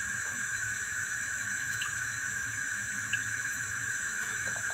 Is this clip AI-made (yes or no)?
yes